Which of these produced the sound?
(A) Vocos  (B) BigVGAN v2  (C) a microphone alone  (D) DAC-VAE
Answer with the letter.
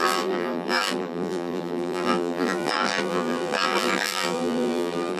B